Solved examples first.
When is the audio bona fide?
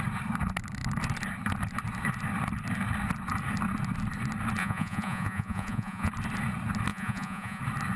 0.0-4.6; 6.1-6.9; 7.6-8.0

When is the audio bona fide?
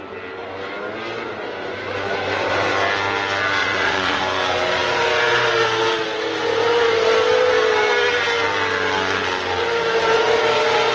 0.0-3.6; 4.2-10.9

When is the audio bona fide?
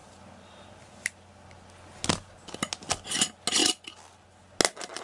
0.0-5.0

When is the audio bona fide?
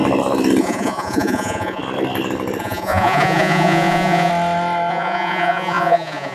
0.0-0.6; 1.8-2.6; 4.3-4.9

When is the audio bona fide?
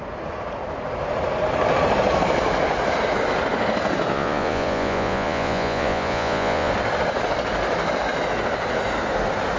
0.0-4.1; 6.7-9.6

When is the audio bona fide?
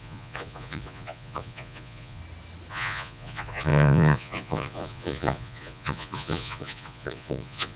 2.2-2.7